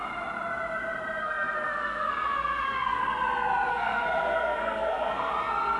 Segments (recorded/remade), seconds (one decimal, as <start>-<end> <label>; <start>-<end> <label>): 0.0-1.2 recorded; 1.2-3.1 remade; 3.1-3.7 recorded; 3.7-5.3 remade; 5.3-5.8 recorded